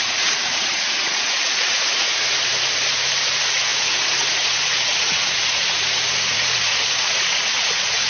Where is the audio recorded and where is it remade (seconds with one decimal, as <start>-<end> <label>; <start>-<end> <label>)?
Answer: 0.0-2.4 remade; 2.4-3.3 recorded; 3.3-8.1 remade